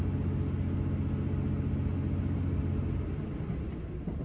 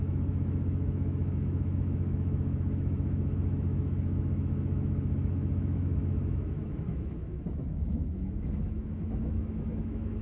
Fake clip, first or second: second